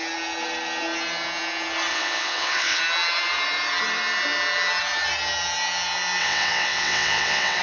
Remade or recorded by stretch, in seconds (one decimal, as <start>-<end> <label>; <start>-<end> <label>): 0.0-1.9 recorded; 1.9-2.8 remade; 2.8-6.2 recorded; 6.2-7.6 remade